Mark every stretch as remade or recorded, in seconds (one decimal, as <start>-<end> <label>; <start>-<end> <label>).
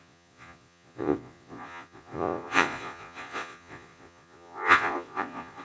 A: 0.0-5.6 remade